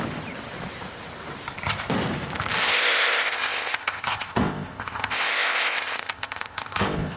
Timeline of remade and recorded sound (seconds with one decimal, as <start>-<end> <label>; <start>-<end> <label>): 0.0-2.6 recorded; 2.6-7.2 remade